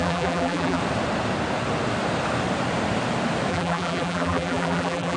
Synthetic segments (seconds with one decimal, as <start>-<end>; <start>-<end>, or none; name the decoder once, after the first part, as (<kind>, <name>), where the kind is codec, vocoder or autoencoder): 0.0-0.8 (vocoder, BigVGAN v2); 3.5-5.2